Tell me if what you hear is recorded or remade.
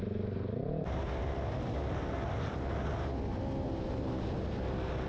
recorded